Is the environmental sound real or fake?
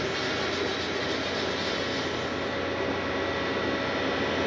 real